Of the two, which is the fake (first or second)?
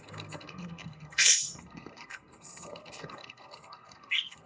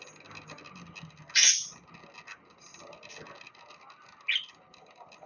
first